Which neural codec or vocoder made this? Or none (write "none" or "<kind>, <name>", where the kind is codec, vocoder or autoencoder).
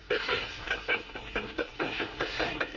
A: codec, SNAC